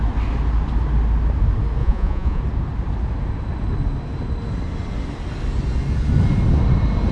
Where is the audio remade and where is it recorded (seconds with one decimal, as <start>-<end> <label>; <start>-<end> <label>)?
0.0-1.8 recorded; 1.8-2.4 remade; 2.4-7.1 recorded